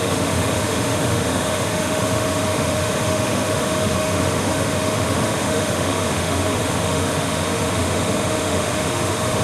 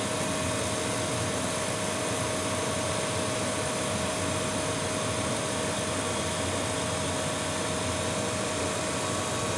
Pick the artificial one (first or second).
first